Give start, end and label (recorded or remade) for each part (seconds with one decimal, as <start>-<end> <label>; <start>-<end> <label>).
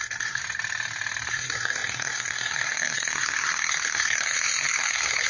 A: 0.0-0.4 remade; 0.4-1.3 recorded; 1.3-5.3 remade